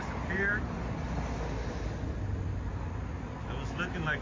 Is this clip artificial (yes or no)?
no